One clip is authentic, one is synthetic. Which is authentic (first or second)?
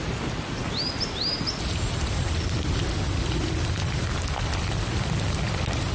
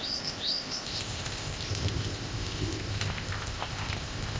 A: first